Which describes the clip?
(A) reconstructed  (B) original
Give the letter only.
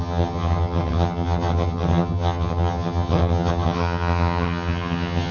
A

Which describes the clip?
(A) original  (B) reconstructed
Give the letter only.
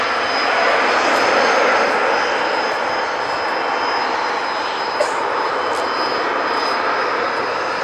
A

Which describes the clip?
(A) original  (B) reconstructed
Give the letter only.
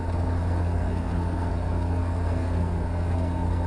B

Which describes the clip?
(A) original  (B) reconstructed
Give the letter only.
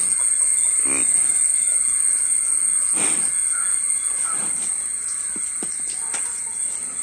A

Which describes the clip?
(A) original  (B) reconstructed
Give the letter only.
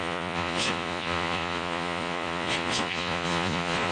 B